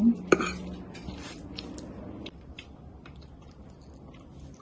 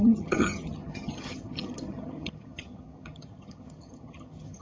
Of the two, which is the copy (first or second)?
second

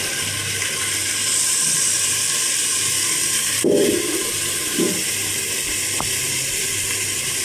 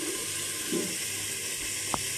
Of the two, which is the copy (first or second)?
first